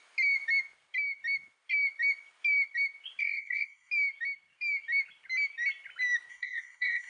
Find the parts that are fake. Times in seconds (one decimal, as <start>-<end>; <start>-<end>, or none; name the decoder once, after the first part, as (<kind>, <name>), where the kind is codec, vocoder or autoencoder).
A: 3.2-3.9 (codec, SNAC); 6.3-7.1